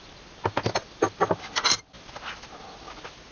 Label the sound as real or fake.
real